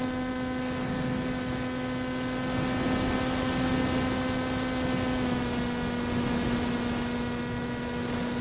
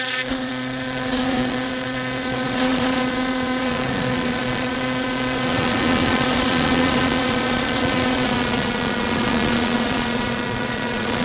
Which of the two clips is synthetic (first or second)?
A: second